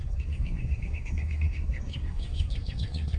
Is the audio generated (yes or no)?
yes